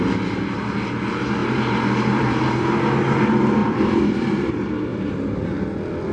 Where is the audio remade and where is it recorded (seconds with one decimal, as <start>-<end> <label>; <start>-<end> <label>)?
0.0-1.4 recorded; 1.4-3.2 remade; 3.2-3.6 recorded; 3.6-4.5 remade; 4.5-4.9 recorded; 4.9-5.5 remade; 5.5-6.1 recorded